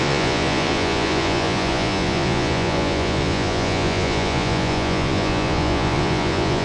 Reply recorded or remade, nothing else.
remade